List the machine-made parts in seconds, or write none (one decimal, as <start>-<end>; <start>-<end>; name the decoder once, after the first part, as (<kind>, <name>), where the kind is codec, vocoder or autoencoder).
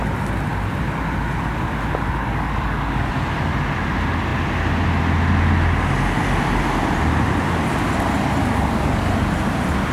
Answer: 2.2-3.1 (codec, DAC); 8.4-9.1